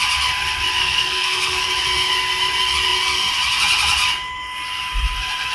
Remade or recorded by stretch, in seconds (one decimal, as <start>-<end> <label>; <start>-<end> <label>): 0.0-0.8 recorded; 0.8-1.7 remade; 1.7-5.5 recorded